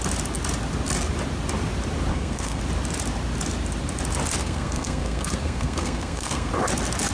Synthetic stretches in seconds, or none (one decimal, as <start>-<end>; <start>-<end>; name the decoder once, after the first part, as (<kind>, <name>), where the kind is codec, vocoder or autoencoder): 2.1-2.6 (codec, SNAC); 4.4-6.5